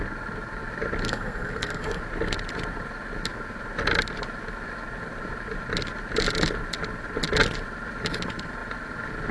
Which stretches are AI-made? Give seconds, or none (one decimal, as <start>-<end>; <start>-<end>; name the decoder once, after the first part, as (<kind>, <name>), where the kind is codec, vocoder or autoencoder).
1.0-2.0 (codec, SNAC)